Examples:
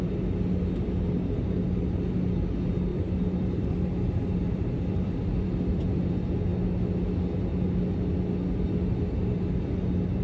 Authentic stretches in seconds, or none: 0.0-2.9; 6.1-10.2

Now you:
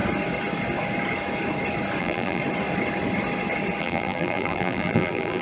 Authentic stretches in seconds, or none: 0.0-2.0; 2.4-3.8

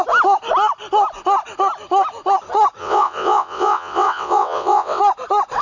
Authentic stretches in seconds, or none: 0.0-2.8; 5.0-5.6

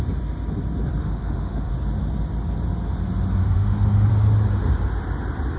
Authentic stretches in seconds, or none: 0.0-1.0; 1.7-3.4; 4.1-5.6

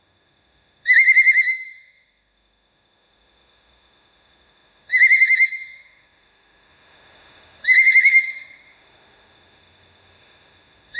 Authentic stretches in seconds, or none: none

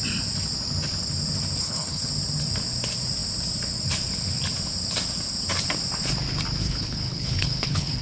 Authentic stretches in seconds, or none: 0.0-1.6; 2.1-6.6

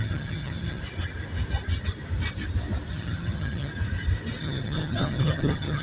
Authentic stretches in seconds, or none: 0.8-2.9; 3.7-4.4